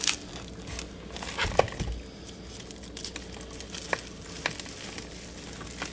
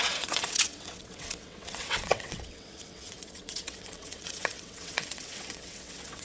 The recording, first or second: first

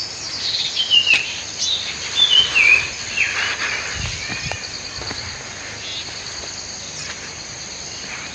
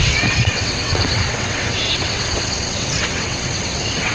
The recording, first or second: first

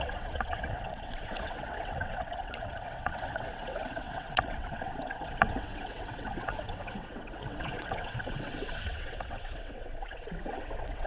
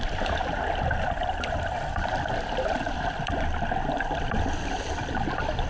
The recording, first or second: second